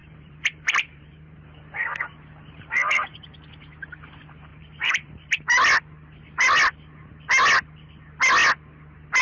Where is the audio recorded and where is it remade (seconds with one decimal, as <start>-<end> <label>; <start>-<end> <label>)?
0.0-1.4 remade; 1.4-4.5 recorded; 4.5-5.3 remade; 5.3-9.2 recorded